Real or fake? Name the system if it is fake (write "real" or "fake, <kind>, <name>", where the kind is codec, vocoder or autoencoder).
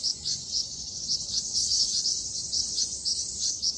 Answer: fake, vocoder, Vocos